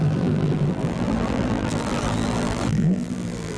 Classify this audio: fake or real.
fake